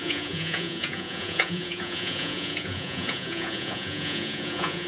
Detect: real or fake fake